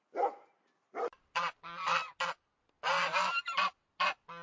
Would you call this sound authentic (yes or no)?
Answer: yes